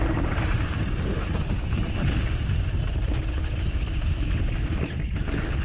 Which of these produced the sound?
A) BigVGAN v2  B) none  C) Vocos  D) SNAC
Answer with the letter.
B